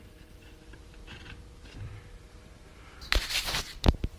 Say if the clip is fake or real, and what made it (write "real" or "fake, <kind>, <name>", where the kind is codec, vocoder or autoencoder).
fake, vocoder, BigVGAN v2